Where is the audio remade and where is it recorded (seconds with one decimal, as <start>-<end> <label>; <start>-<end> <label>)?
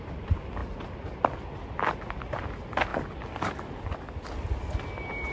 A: 0.0-5.3 recorded